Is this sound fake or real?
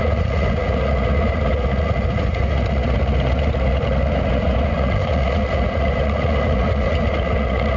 fake